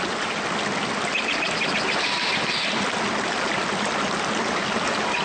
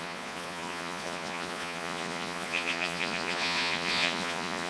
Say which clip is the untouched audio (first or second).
first